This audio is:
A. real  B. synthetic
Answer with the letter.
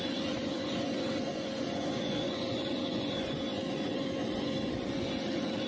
B